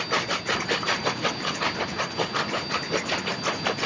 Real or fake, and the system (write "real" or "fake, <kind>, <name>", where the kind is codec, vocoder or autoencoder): real